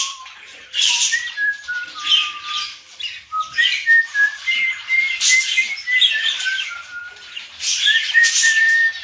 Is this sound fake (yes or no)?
yes